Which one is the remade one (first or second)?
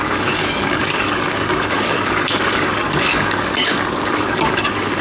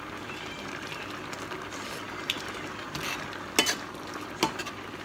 first